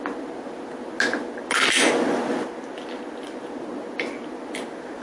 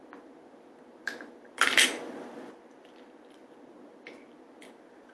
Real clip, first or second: first